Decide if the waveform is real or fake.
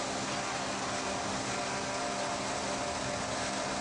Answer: real